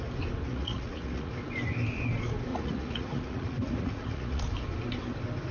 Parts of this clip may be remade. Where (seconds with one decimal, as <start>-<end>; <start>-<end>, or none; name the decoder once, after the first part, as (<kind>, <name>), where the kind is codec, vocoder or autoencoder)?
0.5-1.3 (vocoder, Vocos); 2.5-4.4